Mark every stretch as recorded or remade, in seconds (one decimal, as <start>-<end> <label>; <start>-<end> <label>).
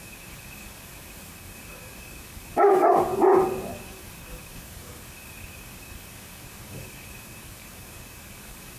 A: 0.0-3.1 remade; 3.1-3.7 recorded; 3.7-8.8 remade